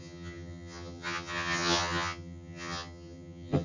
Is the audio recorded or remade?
remade